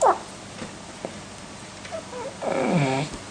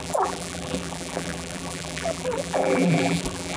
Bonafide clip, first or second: first